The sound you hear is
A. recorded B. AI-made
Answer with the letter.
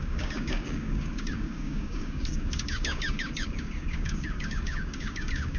B